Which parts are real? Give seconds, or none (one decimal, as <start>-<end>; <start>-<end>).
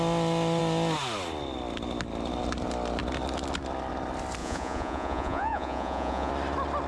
0.0-4.4; 6.3-6.9